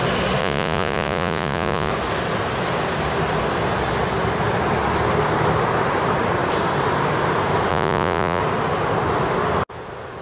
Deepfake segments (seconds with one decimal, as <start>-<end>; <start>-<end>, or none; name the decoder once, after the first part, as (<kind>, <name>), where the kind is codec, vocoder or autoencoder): 0.4-1.9 (vocoder, Vocos); 7.7-8.4